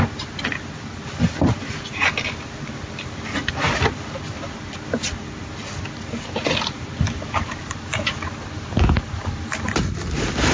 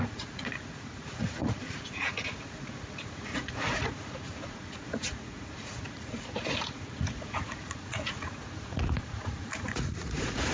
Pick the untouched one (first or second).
first